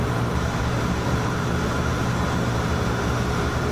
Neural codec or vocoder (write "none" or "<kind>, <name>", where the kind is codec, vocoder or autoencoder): vocoder, BigVGAN v2